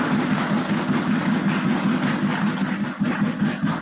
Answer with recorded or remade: recorded